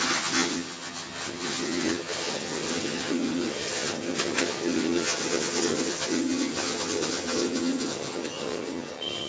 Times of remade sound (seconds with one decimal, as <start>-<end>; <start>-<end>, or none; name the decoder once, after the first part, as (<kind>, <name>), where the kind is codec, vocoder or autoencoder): 0.0-9.3 (vocoder, HiFi-GAN)